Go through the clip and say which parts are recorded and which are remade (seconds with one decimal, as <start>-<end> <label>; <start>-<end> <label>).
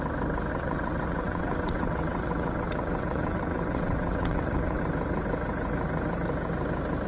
0.0-0.5 recorded; 0.5-4.8 remade; 4.8-7.1 recorded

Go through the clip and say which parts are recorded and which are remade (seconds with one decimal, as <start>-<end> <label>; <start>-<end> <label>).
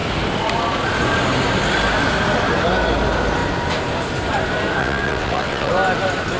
0.0-4.8 recorded; 4.8-5.7 remade; 5.7-6.4 recorded